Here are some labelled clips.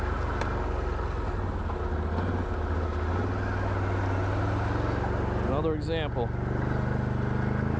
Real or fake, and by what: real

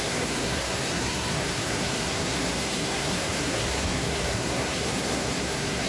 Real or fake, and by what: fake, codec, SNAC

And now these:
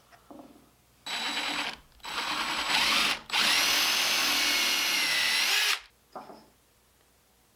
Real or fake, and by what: real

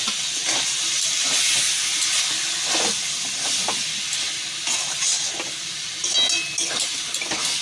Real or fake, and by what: real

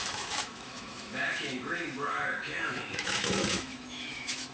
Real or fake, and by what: fake, autoencoder, DAC-VAE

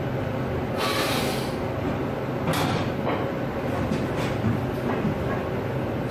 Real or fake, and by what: real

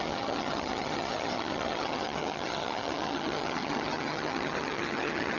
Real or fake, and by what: fake, vocoder, HiFi-GAN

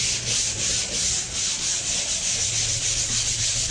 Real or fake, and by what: real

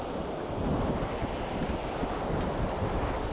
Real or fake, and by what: real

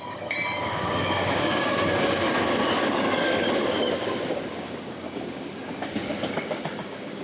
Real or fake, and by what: fake, codec, DAC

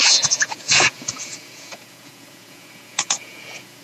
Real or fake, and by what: fake, vocoder, Vocos